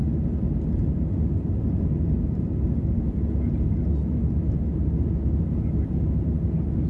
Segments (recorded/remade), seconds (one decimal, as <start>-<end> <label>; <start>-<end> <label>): 0.0-6.9 recorded